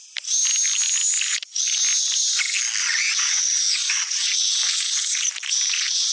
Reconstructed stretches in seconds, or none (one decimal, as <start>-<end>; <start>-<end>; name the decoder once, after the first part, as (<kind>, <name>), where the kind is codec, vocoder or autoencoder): 1.3-1.8 (vocoder, Vocos); 2.8-6.1